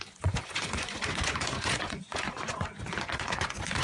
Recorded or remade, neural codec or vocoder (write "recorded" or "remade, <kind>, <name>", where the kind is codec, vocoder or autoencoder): remade, vocoder, Vocos